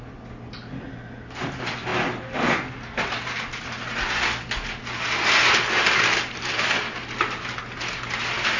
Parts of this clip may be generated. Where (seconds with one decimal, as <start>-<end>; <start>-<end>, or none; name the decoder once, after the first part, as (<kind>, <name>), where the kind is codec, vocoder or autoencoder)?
none